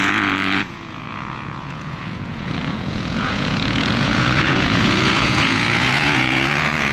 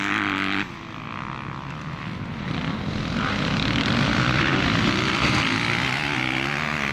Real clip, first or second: second